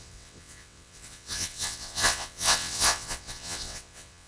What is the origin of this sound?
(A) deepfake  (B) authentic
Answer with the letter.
A